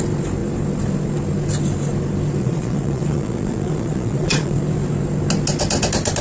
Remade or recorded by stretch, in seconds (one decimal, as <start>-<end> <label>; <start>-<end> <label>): 0.0-2.4 recorded; 2.4-4.6 remade; 4.6-6.2 recorded